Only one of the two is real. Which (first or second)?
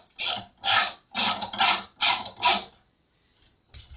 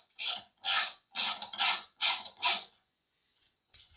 first